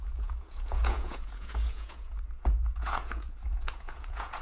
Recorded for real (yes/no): no